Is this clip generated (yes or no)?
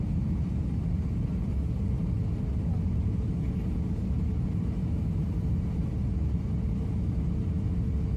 no